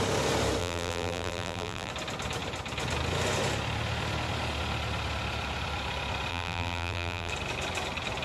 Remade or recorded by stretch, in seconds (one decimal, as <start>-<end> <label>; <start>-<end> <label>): 0.0-0.6 recorded; 0.6-1.9 remade; 1.9-6.3 recorded; 6.3-7.3 remade; 7.3-8.2 recorded